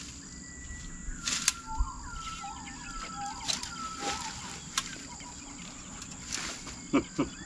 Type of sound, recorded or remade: recorded